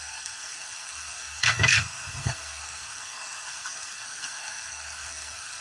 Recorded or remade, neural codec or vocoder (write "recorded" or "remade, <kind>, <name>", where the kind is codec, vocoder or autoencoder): remade, codec, SNAC